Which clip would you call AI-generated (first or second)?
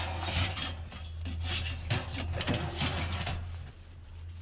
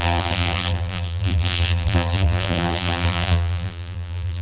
second